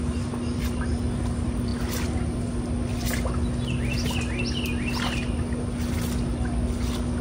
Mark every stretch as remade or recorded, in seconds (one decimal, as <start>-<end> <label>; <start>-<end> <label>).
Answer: 0.0-7.2 recorded